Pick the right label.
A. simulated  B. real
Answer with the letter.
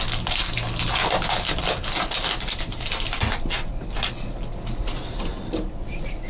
B